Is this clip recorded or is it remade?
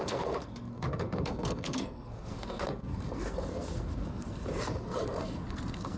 remade